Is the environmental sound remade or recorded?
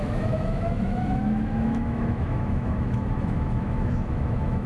remade